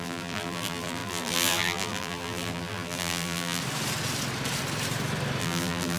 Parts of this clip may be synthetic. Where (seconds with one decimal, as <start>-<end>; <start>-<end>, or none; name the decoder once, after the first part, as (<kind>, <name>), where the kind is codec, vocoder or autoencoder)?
0.0-3.6 (vocoder, BigVGAN v2); 5.4-6.0